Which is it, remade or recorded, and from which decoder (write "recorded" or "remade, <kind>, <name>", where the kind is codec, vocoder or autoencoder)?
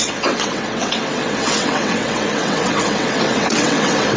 remade, vocoder, WaveNeXt